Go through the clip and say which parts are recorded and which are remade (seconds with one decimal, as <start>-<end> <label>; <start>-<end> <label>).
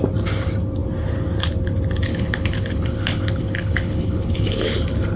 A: 0.0-2.1 recorded; 2.1-4.8 remade; 4.8-5.2 recorded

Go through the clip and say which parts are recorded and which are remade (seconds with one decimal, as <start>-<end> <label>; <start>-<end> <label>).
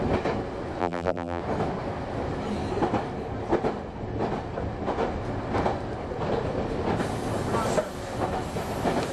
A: 0.0-0.8 recorded; 0.8-1.4 remade; 1.4-9.1 recorded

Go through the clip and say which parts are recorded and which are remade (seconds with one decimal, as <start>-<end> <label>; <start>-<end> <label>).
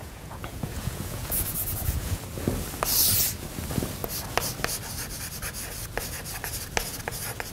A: 0.0-2.2 remade; 2.2-7.5 recorded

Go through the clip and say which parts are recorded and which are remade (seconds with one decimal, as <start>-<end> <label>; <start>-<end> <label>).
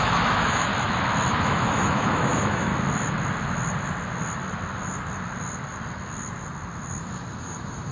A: 0.0-0.7 remade; 0.7-1.4 recorded; 1.4-2.7 remade; 2.7-7.4 recorded; 7.4-7.9 remade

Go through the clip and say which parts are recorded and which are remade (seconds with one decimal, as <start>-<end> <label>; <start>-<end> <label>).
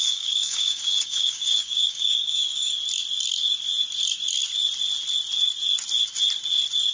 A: 0.0-2.7 remade; 2.7-6.9 recorded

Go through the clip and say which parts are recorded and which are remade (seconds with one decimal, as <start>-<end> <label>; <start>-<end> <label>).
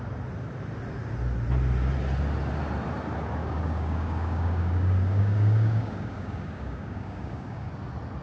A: 0.0-3.4 recorded; 3.4-7.7 remade; 7.7-8.2 recorded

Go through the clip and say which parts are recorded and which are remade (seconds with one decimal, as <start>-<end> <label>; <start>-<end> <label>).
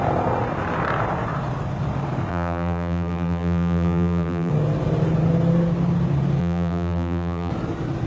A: 0.0-2.3 recorded; 2.3-4.5 remade; 4.5-6.4 recorded; 6.4-7.5 remade; 7.5-8.1 recorded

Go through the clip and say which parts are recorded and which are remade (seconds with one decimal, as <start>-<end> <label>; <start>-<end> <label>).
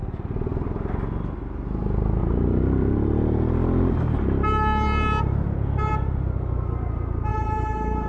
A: 0.0-7.3 recorded; 7.3-8.1 remade